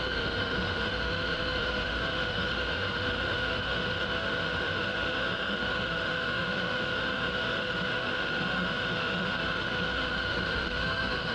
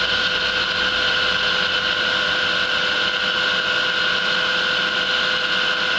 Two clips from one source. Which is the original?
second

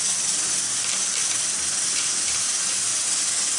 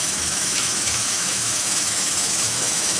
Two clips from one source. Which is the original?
first